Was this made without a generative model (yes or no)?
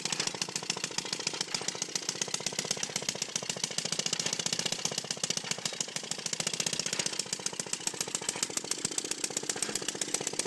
yes